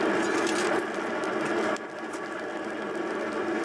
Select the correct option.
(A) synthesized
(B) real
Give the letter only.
B